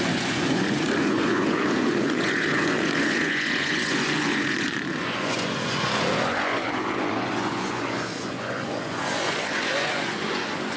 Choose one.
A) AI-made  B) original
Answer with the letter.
A